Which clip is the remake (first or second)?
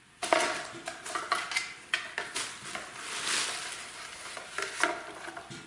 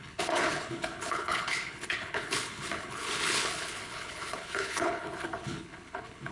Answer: second